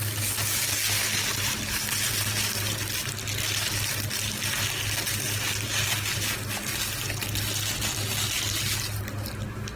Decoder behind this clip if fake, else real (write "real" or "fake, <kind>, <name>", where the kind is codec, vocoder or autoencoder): real